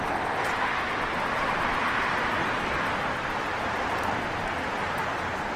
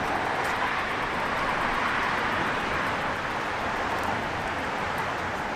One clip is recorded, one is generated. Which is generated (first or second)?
second